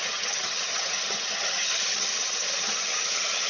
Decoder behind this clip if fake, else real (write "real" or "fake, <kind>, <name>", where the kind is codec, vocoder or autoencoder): fake, vocoder, HiFi-GAN